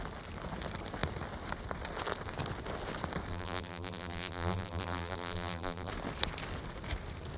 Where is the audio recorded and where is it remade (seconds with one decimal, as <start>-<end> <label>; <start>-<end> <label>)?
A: 0.0-3.3 recorded; 3.3-5.9 remade; 5.9-7.4 recorded